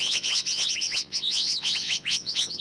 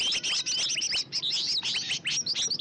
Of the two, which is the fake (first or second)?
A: first